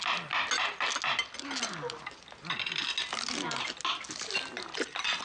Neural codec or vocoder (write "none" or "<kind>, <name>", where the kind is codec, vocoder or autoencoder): none